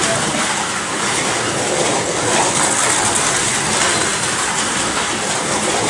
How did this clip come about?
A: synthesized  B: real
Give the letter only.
B